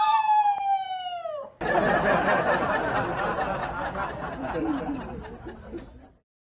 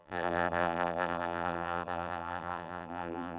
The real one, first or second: first